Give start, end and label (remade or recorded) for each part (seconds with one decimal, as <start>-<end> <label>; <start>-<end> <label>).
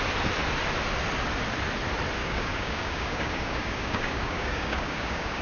0.0-2.2 recorded; 2.2-5.4 remade